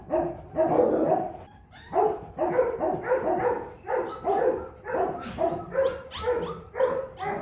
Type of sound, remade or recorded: recorded